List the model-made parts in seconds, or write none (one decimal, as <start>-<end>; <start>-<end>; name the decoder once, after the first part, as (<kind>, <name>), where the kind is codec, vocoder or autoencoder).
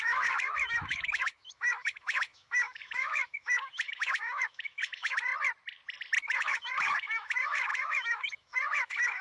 0.0-5.3 (autoencoder, DAC-VAE); 6.2-9.2